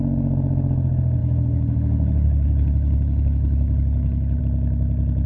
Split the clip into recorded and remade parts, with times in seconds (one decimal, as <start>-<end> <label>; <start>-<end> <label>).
0.0-1.2 recorded; 1.2-4.4 remade; 4.4-5.3 recorded